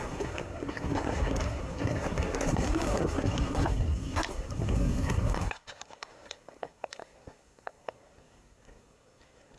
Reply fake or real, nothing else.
fake